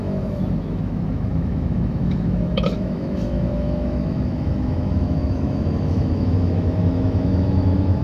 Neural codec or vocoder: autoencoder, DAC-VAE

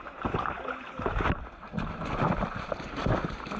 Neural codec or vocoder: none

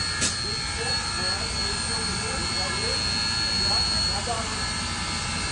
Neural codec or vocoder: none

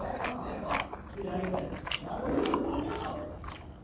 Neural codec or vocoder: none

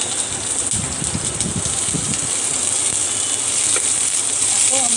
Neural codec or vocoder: none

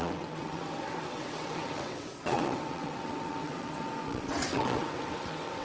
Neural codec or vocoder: vocoder, WaveNeXt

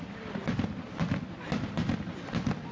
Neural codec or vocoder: none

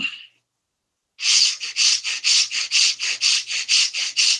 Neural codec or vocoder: none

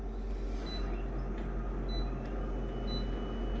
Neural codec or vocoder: none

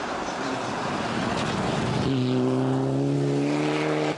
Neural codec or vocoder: none